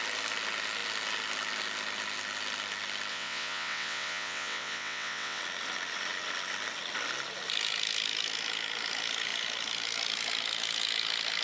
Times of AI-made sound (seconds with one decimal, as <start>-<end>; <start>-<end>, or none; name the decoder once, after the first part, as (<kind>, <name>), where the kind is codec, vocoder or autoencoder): 3.1-5.4 (vocoder, WaveNeXt)